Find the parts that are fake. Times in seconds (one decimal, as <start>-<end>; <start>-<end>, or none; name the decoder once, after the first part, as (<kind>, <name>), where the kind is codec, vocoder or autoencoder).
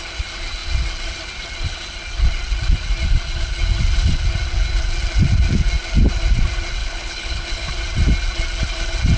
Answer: 6.8-7.7 (codec, HILCodec)